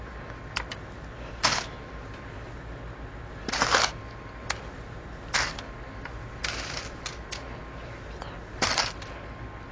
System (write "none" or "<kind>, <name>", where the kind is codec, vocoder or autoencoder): none